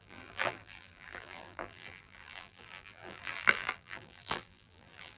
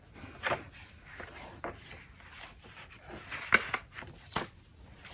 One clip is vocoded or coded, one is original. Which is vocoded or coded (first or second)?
first